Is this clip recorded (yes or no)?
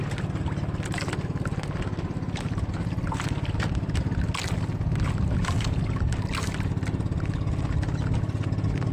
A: yes